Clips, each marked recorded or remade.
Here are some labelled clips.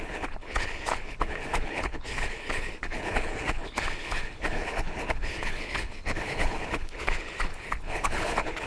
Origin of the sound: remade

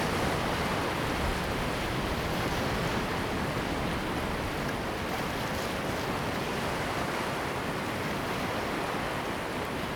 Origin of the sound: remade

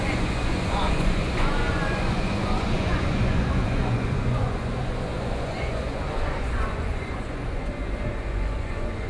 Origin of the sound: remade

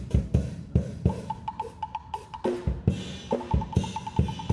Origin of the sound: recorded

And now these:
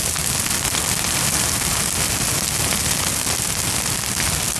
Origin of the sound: recorded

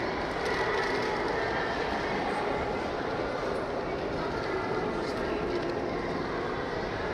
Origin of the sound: recorded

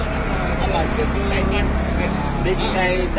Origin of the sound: recorded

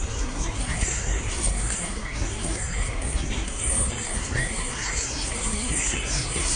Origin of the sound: remade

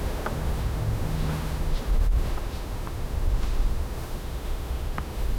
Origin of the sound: remade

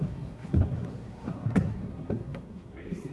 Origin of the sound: remade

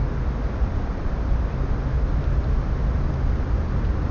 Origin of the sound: recorded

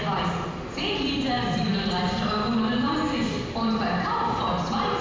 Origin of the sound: recorded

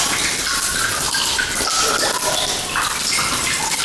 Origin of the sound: recorded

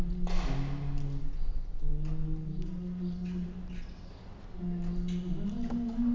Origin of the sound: recorded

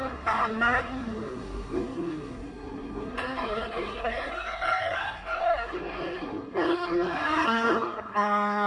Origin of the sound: remade